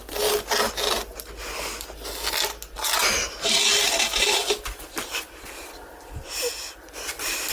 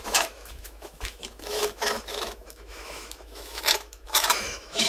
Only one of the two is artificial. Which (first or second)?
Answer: second